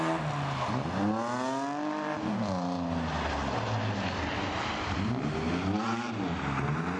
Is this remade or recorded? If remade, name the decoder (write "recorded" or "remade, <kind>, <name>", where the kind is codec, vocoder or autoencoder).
recorded